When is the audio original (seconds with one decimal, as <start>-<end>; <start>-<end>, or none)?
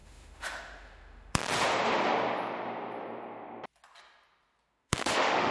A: 1.4-4.7